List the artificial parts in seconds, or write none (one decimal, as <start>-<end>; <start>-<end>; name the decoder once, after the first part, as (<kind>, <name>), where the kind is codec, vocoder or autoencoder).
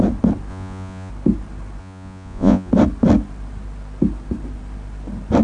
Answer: 0.5-1.1 (vocoder, Vocos); 1.8-2.7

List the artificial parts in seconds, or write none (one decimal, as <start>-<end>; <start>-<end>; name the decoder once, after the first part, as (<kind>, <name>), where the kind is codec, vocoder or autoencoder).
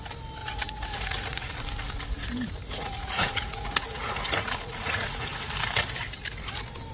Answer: 0.4-1.5 (vocoder, Vocos); 2.7-5.5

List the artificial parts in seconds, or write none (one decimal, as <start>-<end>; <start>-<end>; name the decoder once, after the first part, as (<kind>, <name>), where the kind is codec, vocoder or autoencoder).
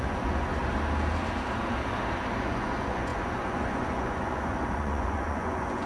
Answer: 0.0-0.6 (vocoder, Vocos); 2.4-5.9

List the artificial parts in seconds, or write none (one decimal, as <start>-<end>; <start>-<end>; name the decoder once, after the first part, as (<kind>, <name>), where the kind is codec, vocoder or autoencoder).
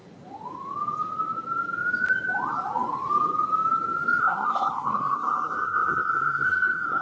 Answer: 4.2-7.0 (codec, SNAC)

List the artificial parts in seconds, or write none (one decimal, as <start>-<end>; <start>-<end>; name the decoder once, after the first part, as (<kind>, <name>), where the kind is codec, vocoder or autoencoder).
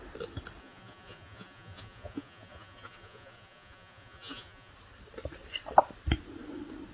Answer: 0.6-4.7 (vocoder, Vocos)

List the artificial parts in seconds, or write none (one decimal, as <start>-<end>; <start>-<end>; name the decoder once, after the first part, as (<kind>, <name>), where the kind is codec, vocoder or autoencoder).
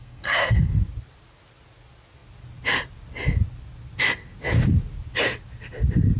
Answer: 0.0-0.7 (codec, SNAC)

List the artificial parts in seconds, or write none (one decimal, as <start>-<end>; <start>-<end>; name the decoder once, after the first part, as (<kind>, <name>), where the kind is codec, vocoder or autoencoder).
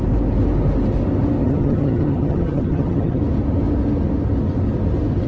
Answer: 1.4-3.2 (vocoder, HiFi-GAN)